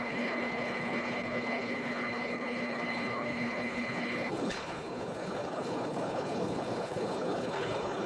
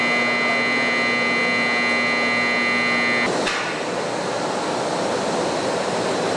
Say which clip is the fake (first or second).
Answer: first